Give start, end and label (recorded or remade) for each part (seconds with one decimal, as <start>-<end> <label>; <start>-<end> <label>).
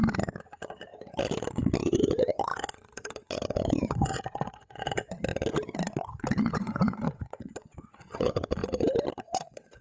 0.0-1.8 recorded; 1.8-5.3 remade; 5.3-6.0 recorded; 6.0-8.6 remade; 8.6-9.1 recorded; 9.1-9.8 remade